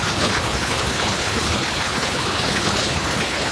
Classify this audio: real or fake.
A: fake